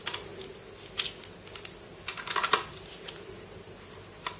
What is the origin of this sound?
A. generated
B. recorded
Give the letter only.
B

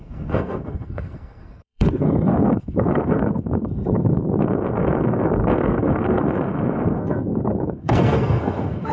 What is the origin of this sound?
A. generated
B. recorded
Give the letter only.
A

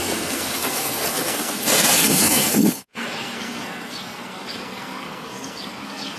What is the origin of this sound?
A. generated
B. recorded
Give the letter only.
A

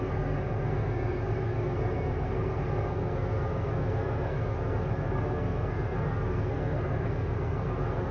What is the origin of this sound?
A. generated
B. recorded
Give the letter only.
A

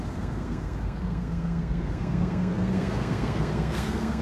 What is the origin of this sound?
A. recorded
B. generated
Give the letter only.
B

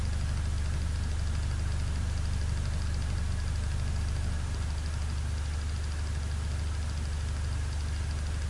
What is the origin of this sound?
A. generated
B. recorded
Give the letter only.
B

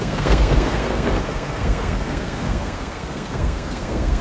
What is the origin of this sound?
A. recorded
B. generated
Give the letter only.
B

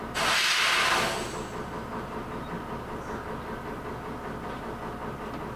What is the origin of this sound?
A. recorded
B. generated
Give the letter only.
A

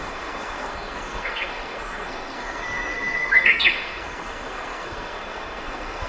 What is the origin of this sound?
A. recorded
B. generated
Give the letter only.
B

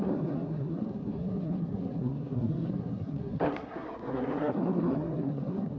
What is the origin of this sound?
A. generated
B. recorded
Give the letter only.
A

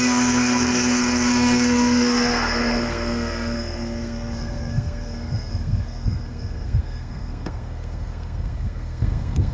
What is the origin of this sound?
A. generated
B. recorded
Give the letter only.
A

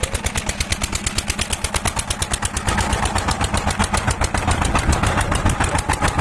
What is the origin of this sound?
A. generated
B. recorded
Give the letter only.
B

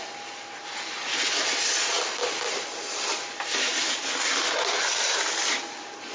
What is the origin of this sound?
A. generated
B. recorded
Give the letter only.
B